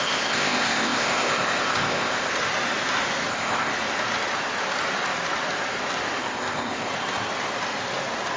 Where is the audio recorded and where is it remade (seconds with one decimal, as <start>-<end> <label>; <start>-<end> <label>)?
0.0-2.3 remade; 2.3-3.3 recorded; 3.3-3.7 remade; 3.7-6.2 recorded; 6.2-6.9 remade; 6.9-8.4 recorded